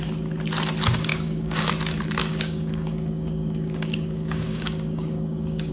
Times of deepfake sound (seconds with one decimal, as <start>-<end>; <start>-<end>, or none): 1.1-1.7; 2.2-5.7